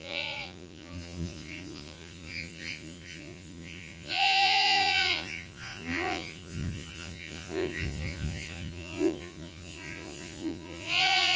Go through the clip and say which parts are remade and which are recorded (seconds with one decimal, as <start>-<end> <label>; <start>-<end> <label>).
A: 0.0-11.4 remade